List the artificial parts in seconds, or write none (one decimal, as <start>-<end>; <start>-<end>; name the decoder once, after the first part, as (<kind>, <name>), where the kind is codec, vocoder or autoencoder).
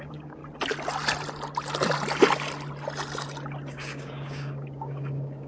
0.0-0.4 (codec, DAC); 3.7-5.5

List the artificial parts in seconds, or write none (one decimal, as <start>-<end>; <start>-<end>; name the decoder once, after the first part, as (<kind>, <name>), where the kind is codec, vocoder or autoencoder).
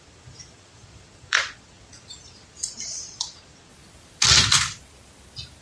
0.0-3.7 (vocoder, Vocos)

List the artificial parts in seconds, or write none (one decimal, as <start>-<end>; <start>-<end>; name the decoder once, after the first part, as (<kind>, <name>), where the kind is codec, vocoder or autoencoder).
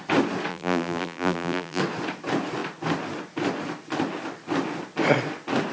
0.5-1.8 (vocoder, BigVGAN v2)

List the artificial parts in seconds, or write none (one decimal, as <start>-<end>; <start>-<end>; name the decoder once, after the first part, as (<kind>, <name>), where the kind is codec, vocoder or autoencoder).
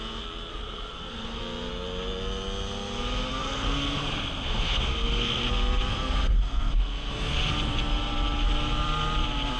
0.5-1.4 (codec, SNAC); 3.4-5.5; 5.9-7.3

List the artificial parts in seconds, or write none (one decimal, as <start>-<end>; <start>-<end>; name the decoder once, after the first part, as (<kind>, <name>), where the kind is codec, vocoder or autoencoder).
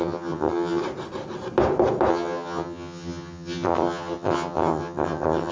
0.0-0.8 (vocoder, HiFi-GAN); 2.1-5.5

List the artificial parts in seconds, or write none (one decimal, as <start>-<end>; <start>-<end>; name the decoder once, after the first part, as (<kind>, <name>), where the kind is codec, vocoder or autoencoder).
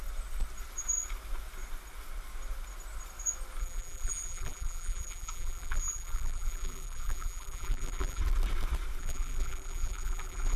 3.6-8.2 (vocoder, BigVGAN v2); 9.0-10.6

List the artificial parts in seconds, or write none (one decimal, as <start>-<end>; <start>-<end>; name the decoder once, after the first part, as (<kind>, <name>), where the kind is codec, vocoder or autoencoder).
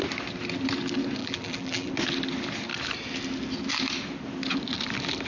1.2-1.9 (vocoder, BigVGAN v2)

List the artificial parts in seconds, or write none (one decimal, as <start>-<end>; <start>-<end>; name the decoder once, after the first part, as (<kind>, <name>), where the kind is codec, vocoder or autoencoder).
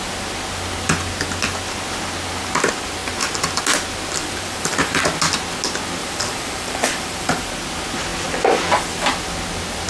4.2-5.0 (vocoder, BigVGAN v2); 6.0-7.5